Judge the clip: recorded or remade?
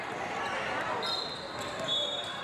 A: recorded